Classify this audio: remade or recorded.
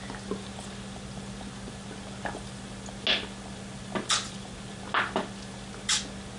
recorded